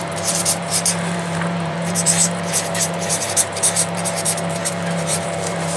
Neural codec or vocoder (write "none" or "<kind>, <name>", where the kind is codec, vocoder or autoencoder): vocoder, BigVGAN v2